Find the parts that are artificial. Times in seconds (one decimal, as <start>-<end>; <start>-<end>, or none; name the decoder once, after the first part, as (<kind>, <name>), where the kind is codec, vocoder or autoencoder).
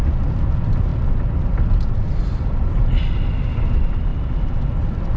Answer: none